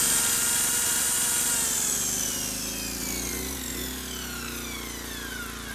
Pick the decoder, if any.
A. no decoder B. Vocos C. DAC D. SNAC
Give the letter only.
A